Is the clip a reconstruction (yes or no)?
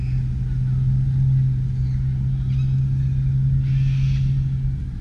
no